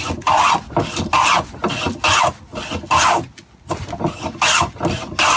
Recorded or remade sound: recorded